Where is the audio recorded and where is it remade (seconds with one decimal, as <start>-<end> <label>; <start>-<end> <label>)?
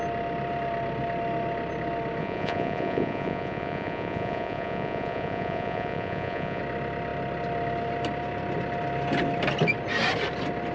0.0-2.2 recorded; 2.2-6.6 remade; 6.6-10.7 recorded